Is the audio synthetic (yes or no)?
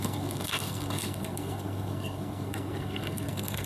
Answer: yes